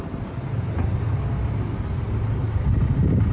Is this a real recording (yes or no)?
yes